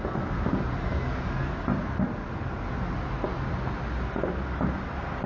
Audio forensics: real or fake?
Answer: real